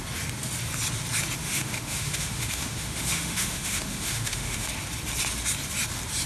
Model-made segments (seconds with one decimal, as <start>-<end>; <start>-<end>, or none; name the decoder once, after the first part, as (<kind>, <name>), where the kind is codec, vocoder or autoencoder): 1.4-4.7 (autoencoder, DAC-VAE)